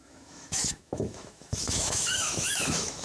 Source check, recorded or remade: remade